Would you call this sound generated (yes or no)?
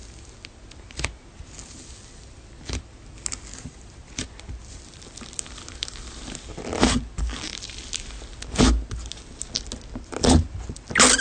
no